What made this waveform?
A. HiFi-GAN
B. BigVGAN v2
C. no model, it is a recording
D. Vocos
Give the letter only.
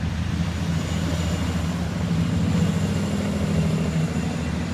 C